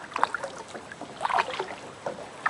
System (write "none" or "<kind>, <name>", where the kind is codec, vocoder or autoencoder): none